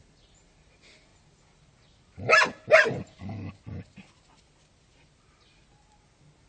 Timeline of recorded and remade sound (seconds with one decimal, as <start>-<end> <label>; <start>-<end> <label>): 0.0-6.5 recorded